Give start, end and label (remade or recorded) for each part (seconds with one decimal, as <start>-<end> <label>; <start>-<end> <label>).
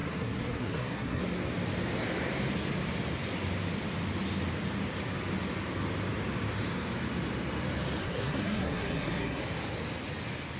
0.0-1.2 remade; 1.2-8.0 recorded; 8.0-9.4 remade; 9.4-10.6 recorded